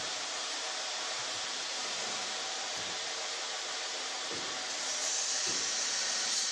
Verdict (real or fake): fake